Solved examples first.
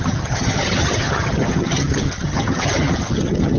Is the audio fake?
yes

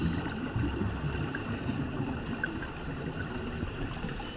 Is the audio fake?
no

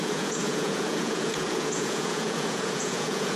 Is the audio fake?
yes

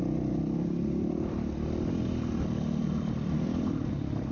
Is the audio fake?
yes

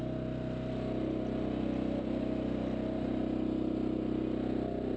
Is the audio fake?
no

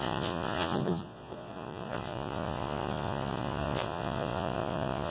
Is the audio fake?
yes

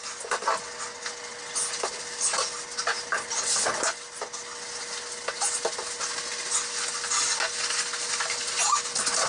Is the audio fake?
no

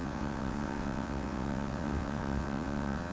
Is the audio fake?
yes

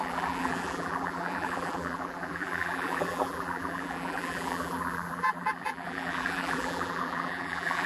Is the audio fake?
yes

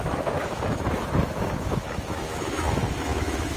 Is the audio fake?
yes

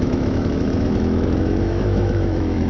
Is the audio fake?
yes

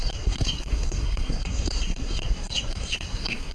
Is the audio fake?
yes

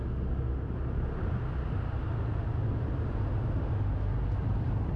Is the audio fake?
no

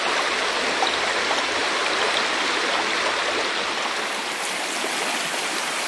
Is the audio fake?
no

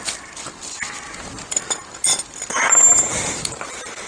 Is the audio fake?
no